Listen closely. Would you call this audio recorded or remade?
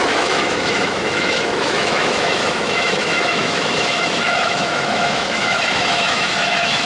remade